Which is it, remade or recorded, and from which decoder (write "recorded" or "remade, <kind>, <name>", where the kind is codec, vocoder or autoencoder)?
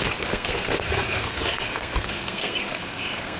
remade, codec, SNAC